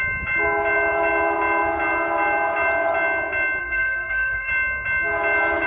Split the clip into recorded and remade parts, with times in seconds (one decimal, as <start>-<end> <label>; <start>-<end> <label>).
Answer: 0.0-3.6 recorded; 3.6-4.5 remade; 4.5-5.7 recorded